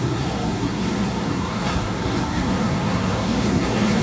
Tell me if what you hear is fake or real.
fake